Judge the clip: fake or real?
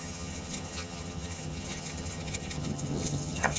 fake